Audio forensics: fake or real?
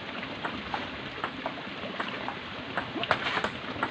real